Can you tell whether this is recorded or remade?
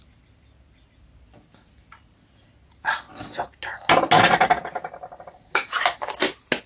recorded